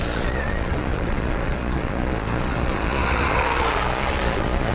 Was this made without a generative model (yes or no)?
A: no